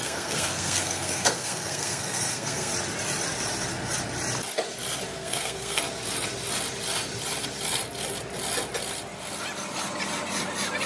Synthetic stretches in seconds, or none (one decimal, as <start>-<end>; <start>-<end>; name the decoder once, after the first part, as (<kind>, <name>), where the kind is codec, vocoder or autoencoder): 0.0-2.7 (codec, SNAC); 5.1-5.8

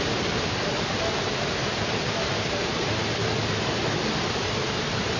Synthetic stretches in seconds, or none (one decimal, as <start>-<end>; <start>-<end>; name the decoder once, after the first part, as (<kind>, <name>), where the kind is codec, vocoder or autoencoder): 0.0-5.2 (vocoder, BigVGAN v2)

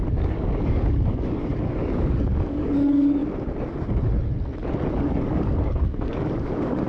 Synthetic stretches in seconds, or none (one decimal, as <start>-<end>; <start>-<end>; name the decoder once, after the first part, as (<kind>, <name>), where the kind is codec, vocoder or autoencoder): 0.0-3.2 (codec, DAC); 4.9-6.9